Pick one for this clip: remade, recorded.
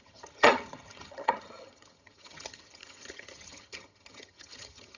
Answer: remade